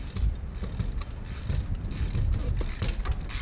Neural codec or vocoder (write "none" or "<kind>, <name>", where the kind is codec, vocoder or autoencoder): none